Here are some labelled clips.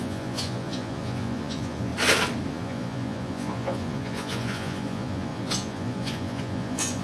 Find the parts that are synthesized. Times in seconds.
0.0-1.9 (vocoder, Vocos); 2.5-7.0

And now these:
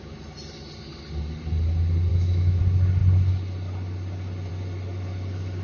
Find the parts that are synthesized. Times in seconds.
2.1-2.6 (autoencoder, DAC-VAE)

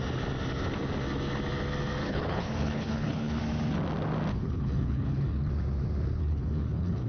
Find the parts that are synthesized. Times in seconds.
2.0-3.4 (codec, HILCodec); 4.3-5.5; 6.2-7.1

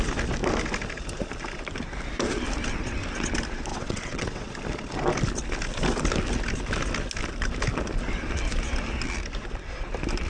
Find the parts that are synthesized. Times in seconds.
3.7-4.5 (vocoder, WaveNeXt)